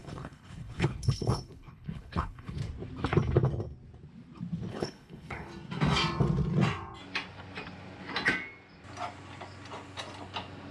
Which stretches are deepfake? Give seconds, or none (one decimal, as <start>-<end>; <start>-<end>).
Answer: 0.0-2.6; 4.7-5.5